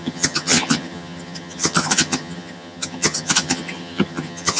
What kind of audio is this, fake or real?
fake